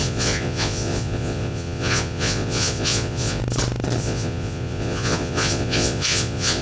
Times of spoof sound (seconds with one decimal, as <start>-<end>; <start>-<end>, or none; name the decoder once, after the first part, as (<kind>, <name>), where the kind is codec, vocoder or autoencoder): 0.0-3.4 (vocoder, Vocos); 4.0-6.6

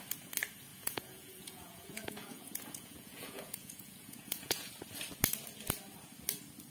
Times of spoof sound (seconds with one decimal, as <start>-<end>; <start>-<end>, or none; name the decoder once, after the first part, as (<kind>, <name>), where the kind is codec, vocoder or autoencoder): 0.7-4.7 (vocoder, Vocos)

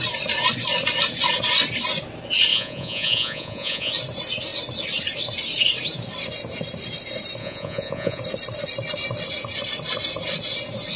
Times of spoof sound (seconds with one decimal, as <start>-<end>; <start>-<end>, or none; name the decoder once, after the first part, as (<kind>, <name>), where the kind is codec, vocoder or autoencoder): 2.5-3.9 (vocoder, Vocos); 7.4-8.2

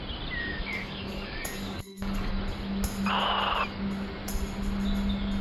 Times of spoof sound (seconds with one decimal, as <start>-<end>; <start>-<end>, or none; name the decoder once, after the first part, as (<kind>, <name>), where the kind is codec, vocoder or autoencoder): 0.4-2.3 (codec, DAC)

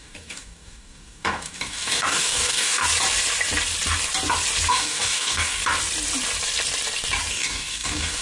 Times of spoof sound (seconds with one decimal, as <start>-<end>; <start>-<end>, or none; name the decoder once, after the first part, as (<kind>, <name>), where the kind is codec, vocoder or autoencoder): 0.0-2.8 (codec, DAC); 4.7-5.6; 7.3-8.2

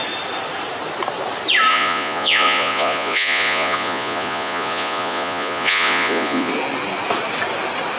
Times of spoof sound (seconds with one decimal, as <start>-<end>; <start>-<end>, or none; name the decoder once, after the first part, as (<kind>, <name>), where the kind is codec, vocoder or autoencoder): 1.7-6.5 (vocoder, Vocos)

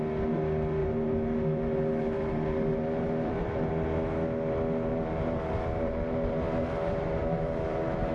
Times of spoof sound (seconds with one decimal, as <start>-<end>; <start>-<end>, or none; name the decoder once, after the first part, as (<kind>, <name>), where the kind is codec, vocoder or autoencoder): 0.8-3.7 (vocoder, BigVGAN v2); 4.9-8.1